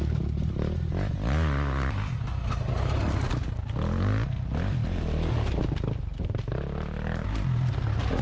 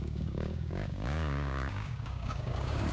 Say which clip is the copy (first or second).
second